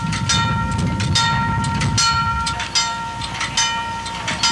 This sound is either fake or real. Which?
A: real